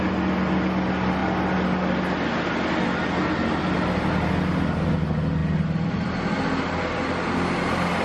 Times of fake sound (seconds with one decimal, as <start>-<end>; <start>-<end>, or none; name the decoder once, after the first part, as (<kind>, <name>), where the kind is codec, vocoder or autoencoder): none